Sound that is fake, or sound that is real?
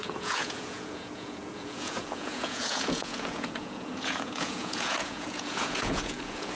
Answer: fake